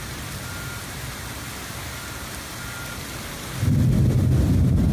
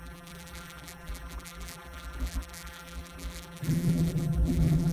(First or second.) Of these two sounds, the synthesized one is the second